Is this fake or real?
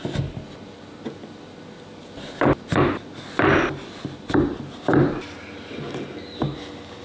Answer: real